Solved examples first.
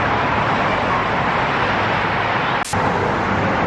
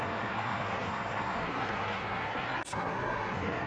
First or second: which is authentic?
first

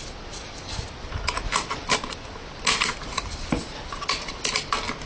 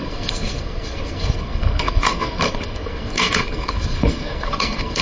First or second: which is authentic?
first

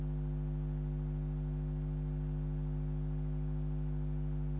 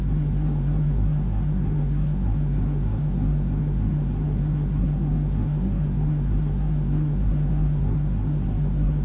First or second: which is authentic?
first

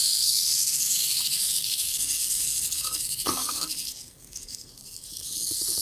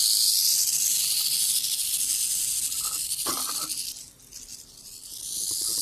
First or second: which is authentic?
second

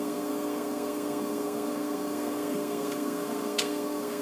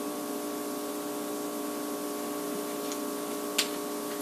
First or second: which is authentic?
second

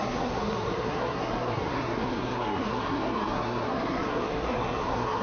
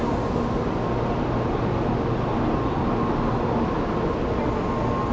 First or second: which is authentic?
second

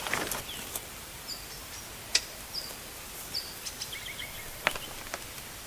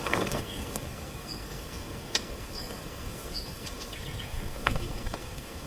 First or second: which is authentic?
first